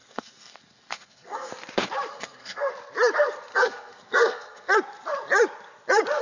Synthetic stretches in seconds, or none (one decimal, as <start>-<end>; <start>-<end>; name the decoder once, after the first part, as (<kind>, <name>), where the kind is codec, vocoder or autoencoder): 0.0-1.5 (codec, SNAC); 2.1-2.7; 3.5-4.7